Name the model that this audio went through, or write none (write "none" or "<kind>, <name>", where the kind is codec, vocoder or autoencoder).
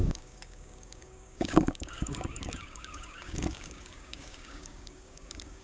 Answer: codec, DAC